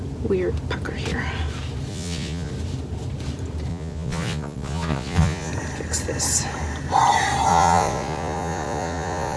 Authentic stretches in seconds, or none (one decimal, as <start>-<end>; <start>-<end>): 0.0-1.9; 2.5-3.7; 5.5-7.5